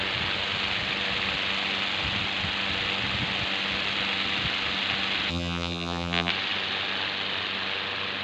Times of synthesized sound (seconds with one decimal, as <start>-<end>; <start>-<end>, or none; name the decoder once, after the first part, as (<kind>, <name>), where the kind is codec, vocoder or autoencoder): 5.3-6.3 (vocoder, BigVGAN v2)